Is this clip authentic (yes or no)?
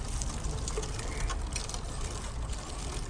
yes